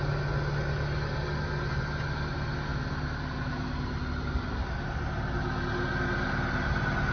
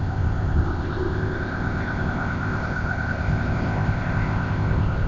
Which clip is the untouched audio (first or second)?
first